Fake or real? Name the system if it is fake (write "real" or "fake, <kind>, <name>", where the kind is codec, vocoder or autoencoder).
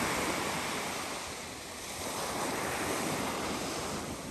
real